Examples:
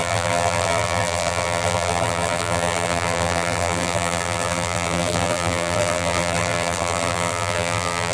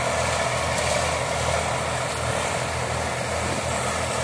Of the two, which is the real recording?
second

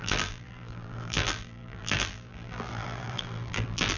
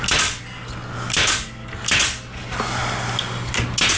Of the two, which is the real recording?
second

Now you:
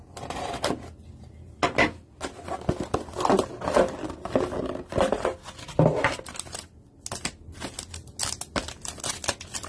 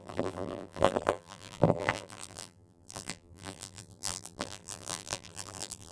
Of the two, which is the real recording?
first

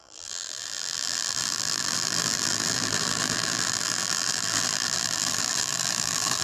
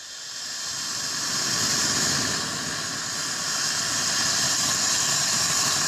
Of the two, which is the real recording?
second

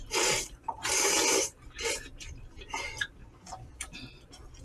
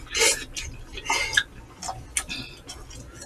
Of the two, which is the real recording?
second